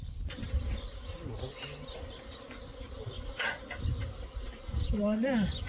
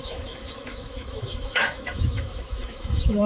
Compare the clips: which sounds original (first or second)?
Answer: first